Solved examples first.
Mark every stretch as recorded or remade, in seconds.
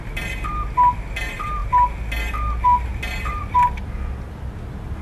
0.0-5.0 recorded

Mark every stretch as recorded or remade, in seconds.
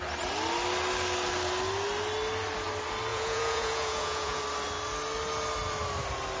0.0-3.1 recorded; 3.1-4.4 remade; 4.4-6.4 recorded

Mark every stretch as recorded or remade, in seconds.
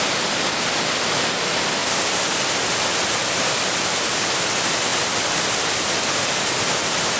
0.0-7.2 recorded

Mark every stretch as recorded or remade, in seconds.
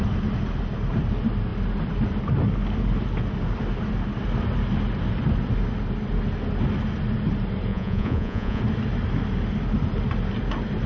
0.0-7.7 recorded; 7.7-8.6 remade; 8.6-10.9 recorded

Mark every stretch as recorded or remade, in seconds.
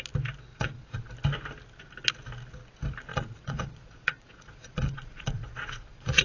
0.0-0.5 recorded; 0.5-1.1 remade; 1.1-3.1 recorded; 3.1-6.2 remade